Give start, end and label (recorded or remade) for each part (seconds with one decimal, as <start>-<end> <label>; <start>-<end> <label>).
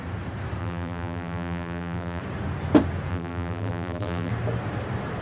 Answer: 0.0-0.6 recorded; 0.6-2.2 remade; 2.2-3.1 recorded; 3.1-4.3 remade; 4.3-5.2 recorded